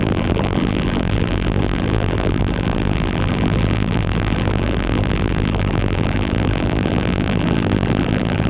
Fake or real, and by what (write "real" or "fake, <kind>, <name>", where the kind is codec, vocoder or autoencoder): fake, vocoder, BigVGAN v2